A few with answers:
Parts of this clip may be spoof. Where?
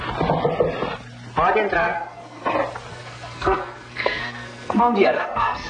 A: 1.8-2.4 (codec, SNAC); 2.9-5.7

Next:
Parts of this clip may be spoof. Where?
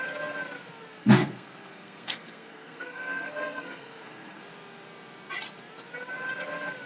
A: 1.0-4.4 (codec, SNAC)